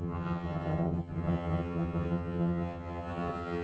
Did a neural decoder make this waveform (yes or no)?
yes